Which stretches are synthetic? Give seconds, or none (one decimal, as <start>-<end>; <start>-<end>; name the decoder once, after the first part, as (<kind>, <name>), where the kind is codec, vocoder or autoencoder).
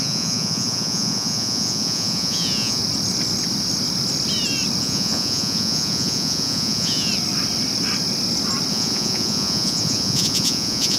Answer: 0.0-2.8 (vocoder, Vocos); 4.8-7.1; 8.7-11.0